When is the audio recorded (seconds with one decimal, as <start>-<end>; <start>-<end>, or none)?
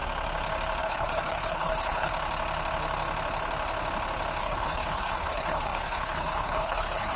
0.0-0.8; 2.1-4.4